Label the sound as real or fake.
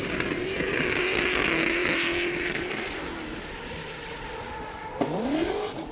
real